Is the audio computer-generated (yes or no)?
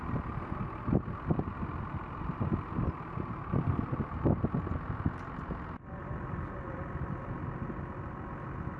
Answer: no